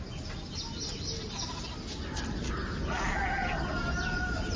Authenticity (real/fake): real